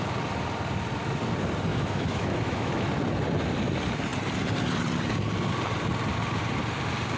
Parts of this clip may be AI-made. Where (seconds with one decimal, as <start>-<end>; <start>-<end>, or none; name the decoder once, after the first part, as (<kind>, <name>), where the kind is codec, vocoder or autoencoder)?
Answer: 1.7-2.9 (autoencoder, DAC-VAE)